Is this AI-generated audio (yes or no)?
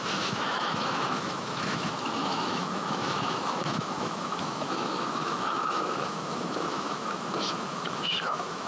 yes